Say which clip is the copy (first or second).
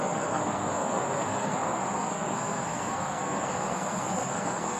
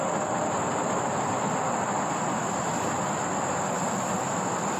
first